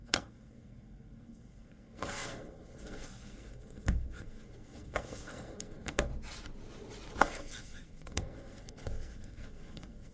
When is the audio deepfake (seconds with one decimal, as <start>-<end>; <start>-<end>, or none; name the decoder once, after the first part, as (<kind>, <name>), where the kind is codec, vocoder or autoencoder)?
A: 0.0-6.1 (codec, SNAC); 7.2-10.1